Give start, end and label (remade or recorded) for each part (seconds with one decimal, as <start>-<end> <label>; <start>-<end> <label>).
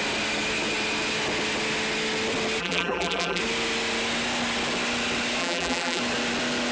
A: 0.0-2.6 recorded; 2.6-3.4 remade; 3.4-5.4 recorded; 5.4-6.0 remade; 6.0-6.7 recorded